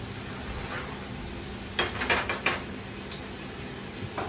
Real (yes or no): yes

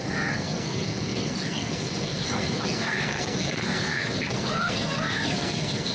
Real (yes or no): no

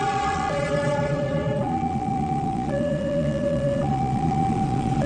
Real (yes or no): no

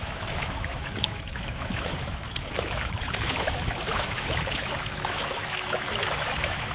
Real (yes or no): no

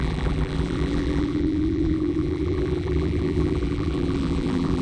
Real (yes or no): no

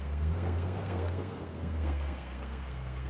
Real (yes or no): no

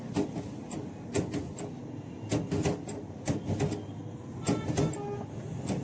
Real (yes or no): yes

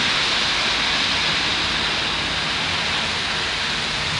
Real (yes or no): yes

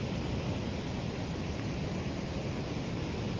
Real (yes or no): yes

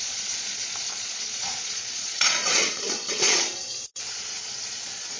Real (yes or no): no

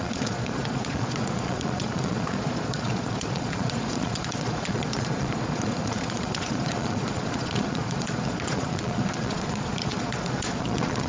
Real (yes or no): no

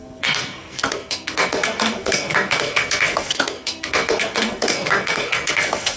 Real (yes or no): no